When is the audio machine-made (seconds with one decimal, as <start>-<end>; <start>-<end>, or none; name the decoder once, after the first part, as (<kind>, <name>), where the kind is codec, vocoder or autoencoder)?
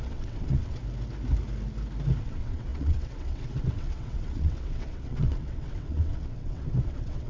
0.0-0.8 (vocoder, WaveNeXt); 2.2-7.3